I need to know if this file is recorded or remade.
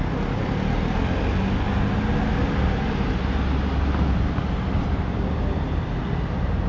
recorded